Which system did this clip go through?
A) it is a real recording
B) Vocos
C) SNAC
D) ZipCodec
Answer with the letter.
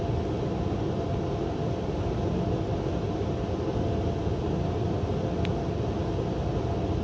A